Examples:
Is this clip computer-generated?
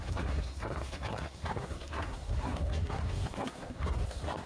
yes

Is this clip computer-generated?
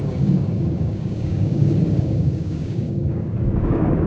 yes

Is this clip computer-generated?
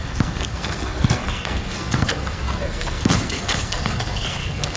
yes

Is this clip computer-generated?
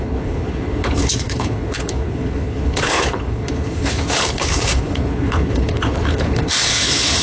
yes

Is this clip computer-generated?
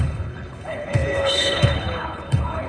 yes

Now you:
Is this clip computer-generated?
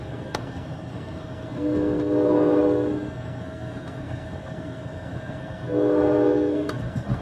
yes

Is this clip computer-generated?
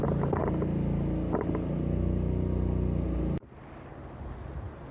no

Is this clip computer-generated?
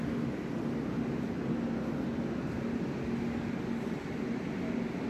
no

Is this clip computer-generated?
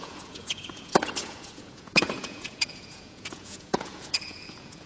yes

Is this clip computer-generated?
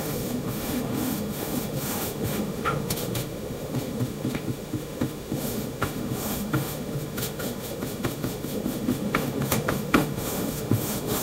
yes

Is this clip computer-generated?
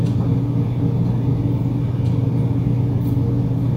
no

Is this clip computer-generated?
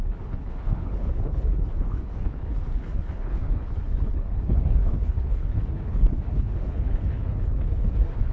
yes